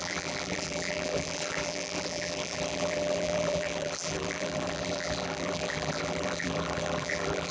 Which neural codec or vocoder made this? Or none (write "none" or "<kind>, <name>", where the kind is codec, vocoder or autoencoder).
vocoder, BigVGAN v2